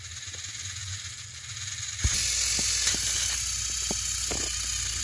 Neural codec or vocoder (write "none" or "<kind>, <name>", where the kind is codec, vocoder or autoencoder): none